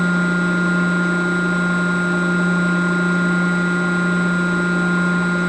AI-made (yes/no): no